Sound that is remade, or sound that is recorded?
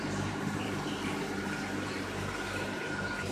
remade